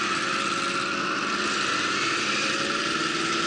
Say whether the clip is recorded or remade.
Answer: recorded